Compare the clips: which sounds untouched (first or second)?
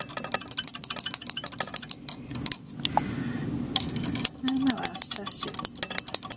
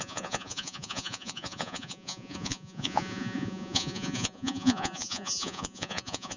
first